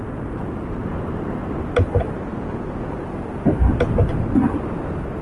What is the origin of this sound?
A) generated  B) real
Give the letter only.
B